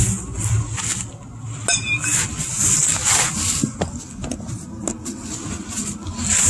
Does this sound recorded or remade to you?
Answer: recorded